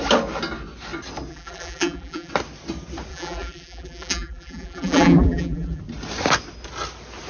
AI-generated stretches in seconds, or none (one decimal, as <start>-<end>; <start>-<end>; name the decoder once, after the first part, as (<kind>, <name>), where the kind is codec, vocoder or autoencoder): 1.3-2.3 (vocoder, BigVGAN v2); 3.1-5.8